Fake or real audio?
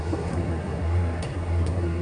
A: fake